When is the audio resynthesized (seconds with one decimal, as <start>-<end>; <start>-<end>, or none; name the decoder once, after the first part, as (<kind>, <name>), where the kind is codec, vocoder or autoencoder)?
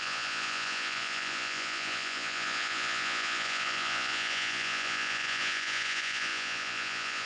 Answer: 0.0-7.3 (vocoder, Vocos)